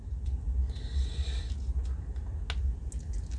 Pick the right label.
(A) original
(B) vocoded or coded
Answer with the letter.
A